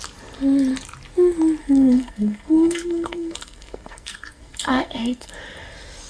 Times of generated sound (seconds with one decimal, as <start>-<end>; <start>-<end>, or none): 1.6-5.3

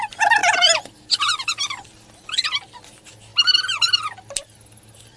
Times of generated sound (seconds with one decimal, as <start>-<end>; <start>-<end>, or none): none